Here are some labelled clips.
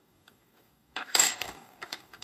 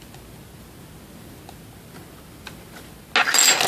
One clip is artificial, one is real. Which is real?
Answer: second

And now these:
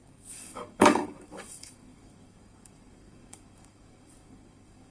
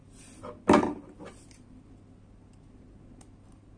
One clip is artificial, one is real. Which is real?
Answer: second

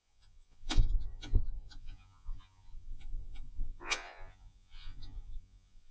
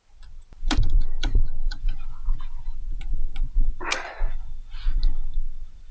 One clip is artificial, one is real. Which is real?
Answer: second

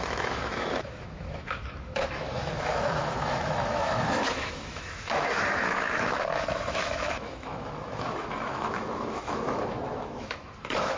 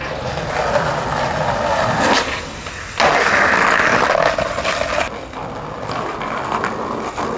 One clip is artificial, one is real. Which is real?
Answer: second